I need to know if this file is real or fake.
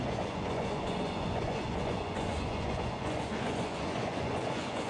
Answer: fake